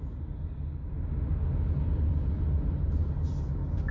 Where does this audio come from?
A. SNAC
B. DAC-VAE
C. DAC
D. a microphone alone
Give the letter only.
D